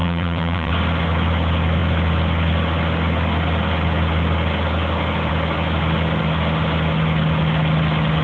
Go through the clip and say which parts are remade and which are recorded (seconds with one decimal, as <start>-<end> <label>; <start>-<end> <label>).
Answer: 0.0-0.7 remade; 0.7-8.2 recorded